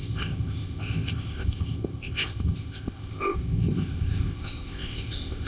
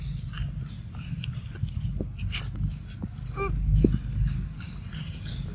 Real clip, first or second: second